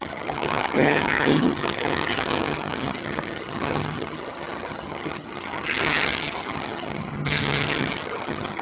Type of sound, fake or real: fake